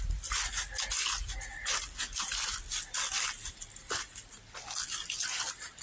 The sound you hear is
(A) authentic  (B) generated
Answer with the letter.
A